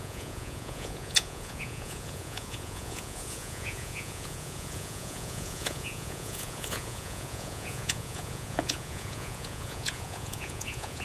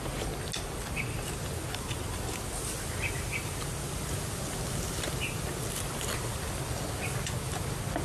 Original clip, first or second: second